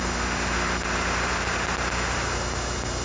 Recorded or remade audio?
recorded